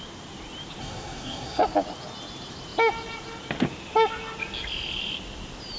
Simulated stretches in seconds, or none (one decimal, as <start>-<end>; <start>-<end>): 0.8-1.6